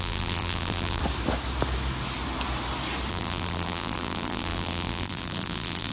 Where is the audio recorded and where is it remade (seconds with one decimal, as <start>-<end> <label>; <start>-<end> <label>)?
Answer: 0.0-1.0 remade; 1.0-3.1 recorded; 3.1-5.9 remade